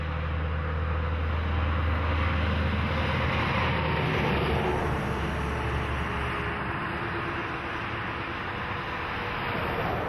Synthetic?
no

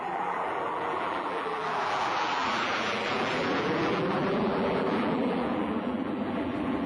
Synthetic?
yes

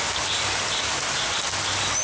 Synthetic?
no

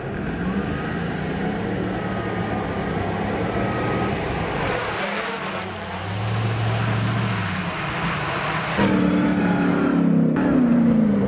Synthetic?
no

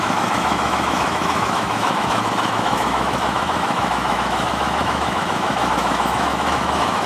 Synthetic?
yes